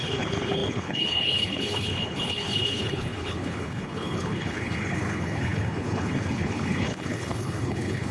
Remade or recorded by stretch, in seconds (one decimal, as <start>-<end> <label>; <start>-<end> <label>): 0.0-8.1 remade